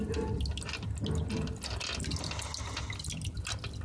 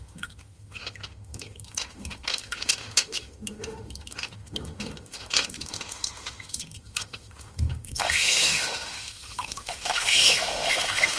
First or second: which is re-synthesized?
second